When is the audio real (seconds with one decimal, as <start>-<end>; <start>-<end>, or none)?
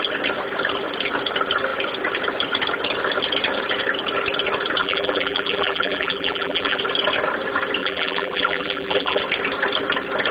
0.0-4.8; 6.8-7.8; 9.2-10.3